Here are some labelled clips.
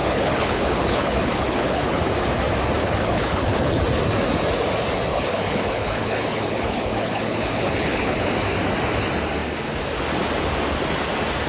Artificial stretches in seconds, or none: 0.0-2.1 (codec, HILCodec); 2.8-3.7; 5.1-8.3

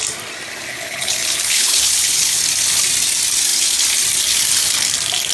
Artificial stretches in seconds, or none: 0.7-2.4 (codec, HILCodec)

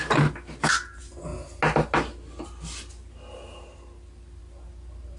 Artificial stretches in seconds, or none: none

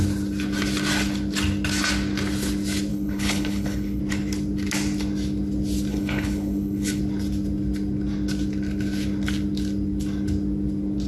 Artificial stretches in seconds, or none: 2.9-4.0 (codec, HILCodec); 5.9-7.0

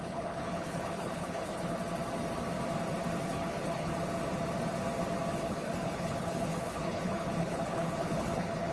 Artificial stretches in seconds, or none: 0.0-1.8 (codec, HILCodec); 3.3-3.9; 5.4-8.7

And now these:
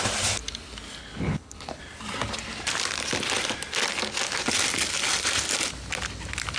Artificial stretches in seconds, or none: 1.0-1.8 (codec, HILCodec)

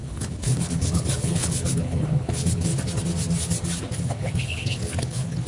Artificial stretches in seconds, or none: 0.0-2.7 (codec, HILCodec); 3.9-5.5

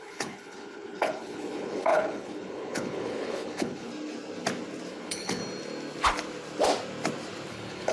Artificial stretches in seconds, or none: 0.0-3.9 (codec, HILCodec); 4.9-5.4; 7.5-7.9